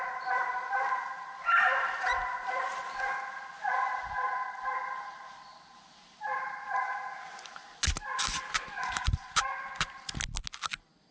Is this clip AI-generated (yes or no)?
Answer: no